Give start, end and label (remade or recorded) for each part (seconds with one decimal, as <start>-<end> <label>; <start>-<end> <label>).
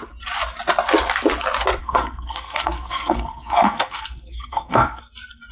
0.0-1.8 recorded; 1.8-5.0 remade; 5.0-5.5 recorded